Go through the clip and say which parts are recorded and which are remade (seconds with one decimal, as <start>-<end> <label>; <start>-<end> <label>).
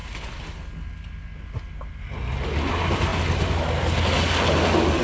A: 0.0-5.0 recorded